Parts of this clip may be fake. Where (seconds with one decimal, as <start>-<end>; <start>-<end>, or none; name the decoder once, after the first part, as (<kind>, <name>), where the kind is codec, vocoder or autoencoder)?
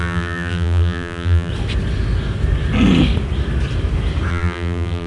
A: 0.0-1.5 (vocoder, BigVGAN v2); 4.3-5.1